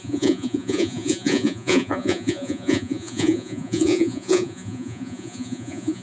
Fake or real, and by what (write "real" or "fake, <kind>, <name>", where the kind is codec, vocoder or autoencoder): fake, vocoder, Vocos